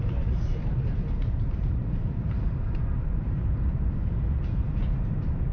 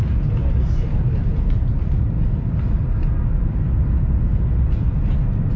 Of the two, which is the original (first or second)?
second